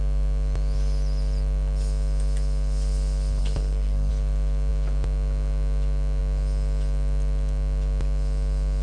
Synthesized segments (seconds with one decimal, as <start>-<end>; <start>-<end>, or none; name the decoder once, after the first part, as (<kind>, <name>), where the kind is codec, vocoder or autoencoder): 3.4-4.1 (codec, SNAC)